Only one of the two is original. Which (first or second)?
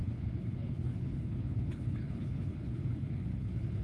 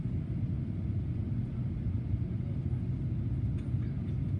second